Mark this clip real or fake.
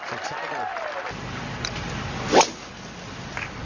real